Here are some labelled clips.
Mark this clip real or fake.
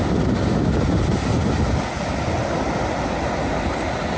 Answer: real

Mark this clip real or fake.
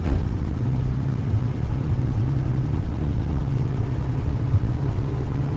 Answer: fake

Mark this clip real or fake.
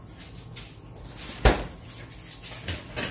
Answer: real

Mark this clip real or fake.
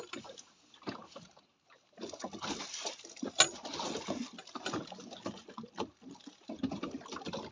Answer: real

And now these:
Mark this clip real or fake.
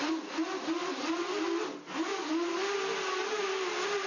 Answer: real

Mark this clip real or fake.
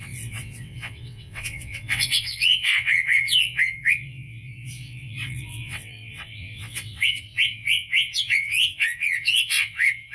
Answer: fake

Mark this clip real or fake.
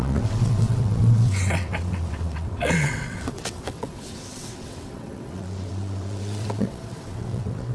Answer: fake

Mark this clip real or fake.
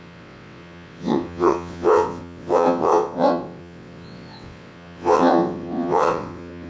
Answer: fake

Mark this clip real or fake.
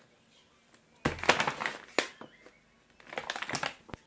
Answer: real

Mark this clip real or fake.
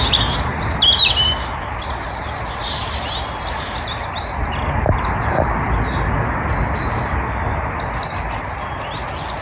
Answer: real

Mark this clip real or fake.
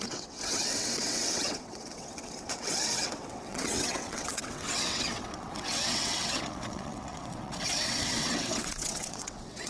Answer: fake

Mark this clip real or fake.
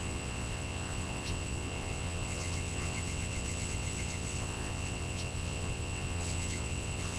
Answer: fake